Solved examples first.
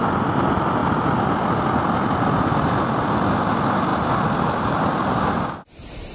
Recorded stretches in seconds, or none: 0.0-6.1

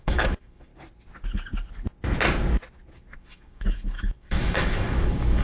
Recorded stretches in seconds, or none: 0.7-3.2